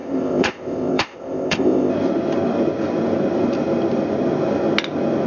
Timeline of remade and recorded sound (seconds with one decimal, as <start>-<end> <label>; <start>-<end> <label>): 0.0-1.9 remade; 1.9-5.3 recorded

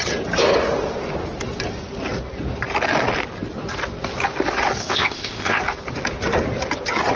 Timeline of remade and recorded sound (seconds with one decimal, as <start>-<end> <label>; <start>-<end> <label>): 0.0-4.8 recorded; 4.8-5.6 remade; 5.6-7.2 recorded

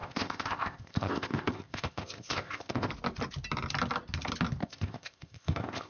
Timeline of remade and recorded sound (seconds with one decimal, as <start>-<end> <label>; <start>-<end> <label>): 0.0-2.9 remade; 2.9-4.6 recorded; 4.6-5.9 remade

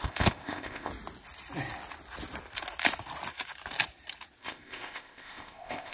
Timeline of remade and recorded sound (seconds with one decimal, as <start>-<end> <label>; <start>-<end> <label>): 0.0-0.9 remade; 0.9-4.4 recorded; 4.4-5.9 remade

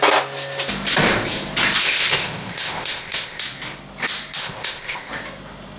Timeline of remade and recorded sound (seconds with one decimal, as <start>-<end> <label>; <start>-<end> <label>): 0.0-1.8 recorded; 1.8-3.4 remade; 3.4-4.4 recorded; 4.4-5.1 remade; 5.1-5.8 recorded